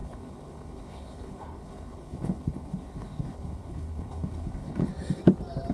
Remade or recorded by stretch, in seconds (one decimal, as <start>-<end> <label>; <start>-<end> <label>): 0.0-4.9 remade; 4.9-5.7 recorded

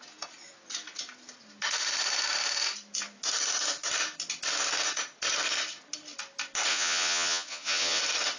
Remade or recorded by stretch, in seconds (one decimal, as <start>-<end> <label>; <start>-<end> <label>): 0.0-6.7 recorded; 6.7-8.0 remade; 8.0-8.4 recorded

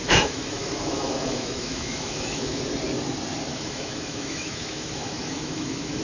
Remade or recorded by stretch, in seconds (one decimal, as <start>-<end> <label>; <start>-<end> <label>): 0.0-2.6 remade; 2.6-3.5 recorded; 3.5-6.0 remade

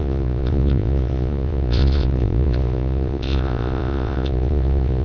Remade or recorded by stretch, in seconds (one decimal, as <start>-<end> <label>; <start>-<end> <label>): 0.0-5.0 remade

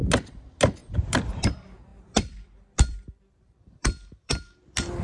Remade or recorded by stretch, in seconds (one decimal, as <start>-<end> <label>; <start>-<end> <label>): 0.0-0.8 recorded; 0.8-1.5 remade; 1.5-1.9 recorded; 1.9-5.0 remade

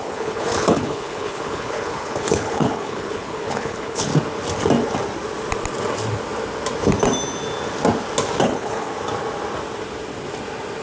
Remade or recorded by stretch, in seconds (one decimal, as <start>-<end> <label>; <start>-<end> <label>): 0.0-4.1 remade; 4.1-8.4 recorded; 8.4-8.9 remade; 8.9-10.8 recorded

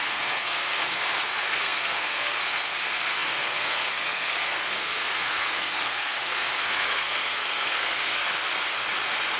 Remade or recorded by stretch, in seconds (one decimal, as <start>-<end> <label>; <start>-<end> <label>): 0.0-8.2 remade; 8.2-9.4 recorded

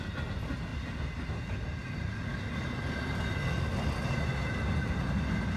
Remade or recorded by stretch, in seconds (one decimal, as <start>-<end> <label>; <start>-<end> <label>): 0.0-5.6 recorded